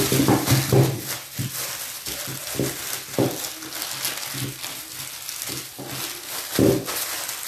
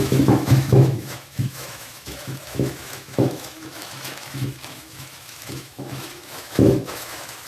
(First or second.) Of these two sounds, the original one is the first